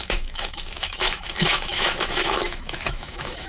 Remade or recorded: remade